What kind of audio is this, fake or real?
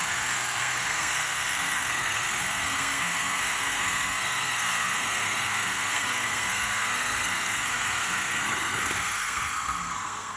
fake